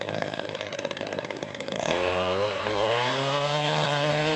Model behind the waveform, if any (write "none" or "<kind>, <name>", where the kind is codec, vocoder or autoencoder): codec, SNAC